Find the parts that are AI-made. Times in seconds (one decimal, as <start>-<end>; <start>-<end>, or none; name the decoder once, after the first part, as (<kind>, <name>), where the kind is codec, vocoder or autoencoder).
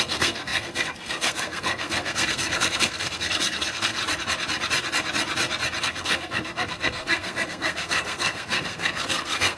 0.0-4.0 (codec, SNAC); 5.8-9.6